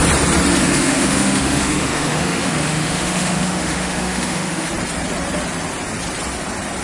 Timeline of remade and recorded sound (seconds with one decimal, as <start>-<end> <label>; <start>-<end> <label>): 0.0-0.6 recorded; 0.6-4.7 remade; 4.7-6.8 recorded